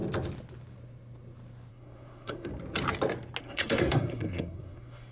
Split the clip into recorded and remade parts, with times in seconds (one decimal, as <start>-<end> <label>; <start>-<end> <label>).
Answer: 0.0-1.7 recorded; 1.7-2.5 remade; 2.5-3.4 recorded; 3.4-5.1 remade